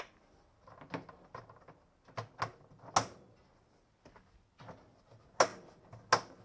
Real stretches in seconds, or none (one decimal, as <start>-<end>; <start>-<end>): 0.0-6.4